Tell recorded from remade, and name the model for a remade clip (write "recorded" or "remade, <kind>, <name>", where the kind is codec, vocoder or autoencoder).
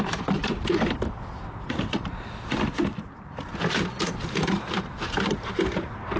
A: remade, vocoder, BigVGAN v2